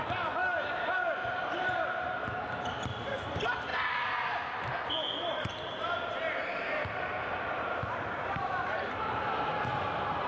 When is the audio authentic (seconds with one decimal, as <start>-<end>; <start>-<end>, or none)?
0.0-0.4; 1.9-5.0; 9.0-10.3